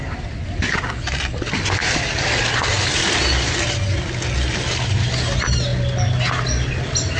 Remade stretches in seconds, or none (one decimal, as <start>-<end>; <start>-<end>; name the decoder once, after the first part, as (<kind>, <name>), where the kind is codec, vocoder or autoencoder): none